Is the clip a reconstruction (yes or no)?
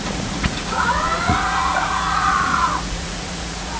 yes